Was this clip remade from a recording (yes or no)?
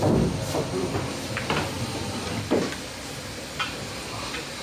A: no